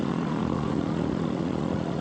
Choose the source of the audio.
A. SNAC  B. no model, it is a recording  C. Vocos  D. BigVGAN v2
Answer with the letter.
C